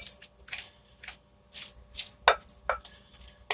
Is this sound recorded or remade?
recorded